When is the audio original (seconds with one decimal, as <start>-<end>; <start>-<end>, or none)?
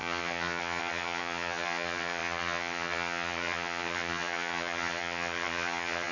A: none